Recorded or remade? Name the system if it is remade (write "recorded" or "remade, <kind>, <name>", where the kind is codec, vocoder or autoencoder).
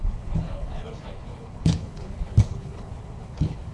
remade, codec, HILCodec